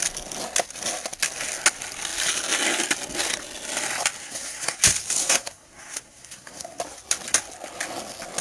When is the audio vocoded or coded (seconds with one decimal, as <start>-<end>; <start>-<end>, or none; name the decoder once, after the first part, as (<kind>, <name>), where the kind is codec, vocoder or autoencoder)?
4.2-4.8 (codec, SNAC); 5.2-6.8